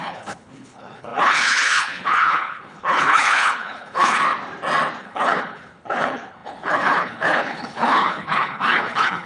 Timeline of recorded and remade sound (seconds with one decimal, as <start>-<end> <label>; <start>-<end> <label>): 0.0-4.2 remade; 4.2-5.0 recorded; 5.0-9.3 remade